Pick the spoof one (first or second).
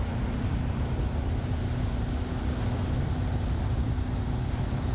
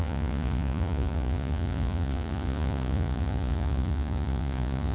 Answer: second